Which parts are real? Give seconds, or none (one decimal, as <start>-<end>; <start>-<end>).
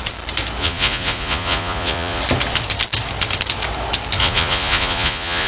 0.0-0.6; 2.2-4.2